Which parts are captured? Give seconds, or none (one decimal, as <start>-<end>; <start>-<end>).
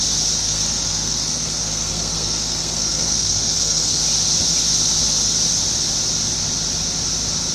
0.0-0.4; 4.0-7.5